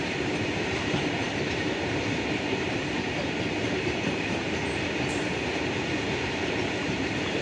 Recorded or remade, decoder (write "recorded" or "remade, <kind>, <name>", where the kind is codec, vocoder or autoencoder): remade, vocoder, BigVGAN v2